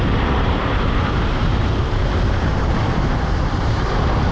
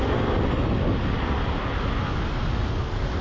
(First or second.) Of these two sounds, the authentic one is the second